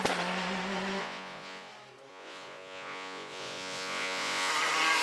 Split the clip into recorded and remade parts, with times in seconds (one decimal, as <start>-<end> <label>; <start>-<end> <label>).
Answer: 0.0-1.0 recorded; 1.0-1.7 remade; 1.7-2.1 recorded; 2.1-4.5 remade; 4.5-5.0 recorded